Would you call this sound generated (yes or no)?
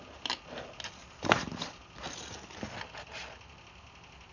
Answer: no